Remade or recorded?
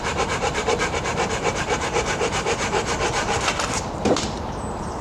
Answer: remade